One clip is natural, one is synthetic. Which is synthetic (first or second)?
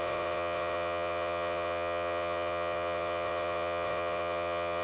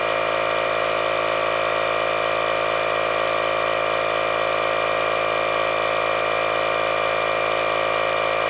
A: first